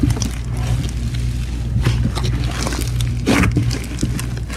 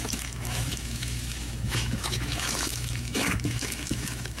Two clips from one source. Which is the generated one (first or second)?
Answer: second